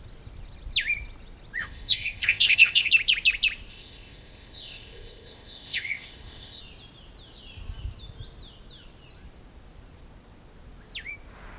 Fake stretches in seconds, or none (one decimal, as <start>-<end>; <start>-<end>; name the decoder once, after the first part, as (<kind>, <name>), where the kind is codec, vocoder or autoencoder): 1.6-2.9 (codec, ZipCodec); 3.7-6.6